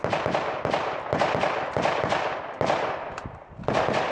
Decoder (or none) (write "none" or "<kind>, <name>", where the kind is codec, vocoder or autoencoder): none